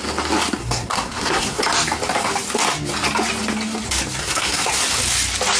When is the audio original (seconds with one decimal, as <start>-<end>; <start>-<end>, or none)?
0.0-0.6; 1.6-4.2; 4.8-5.6